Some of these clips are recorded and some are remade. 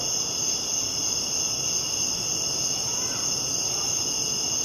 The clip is recorded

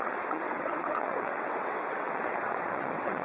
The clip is remade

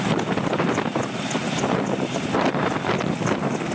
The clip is recorded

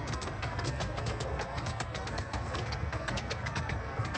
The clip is remade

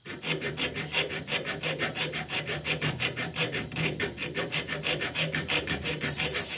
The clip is remade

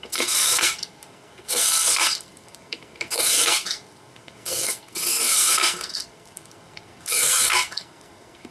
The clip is remade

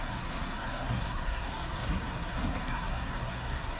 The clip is remade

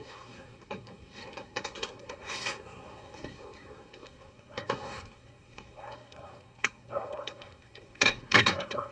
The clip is remade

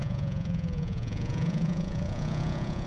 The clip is remade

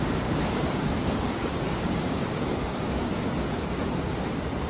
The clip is remade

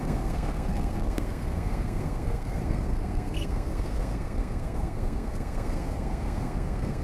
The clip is remade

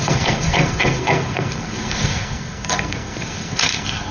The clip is remade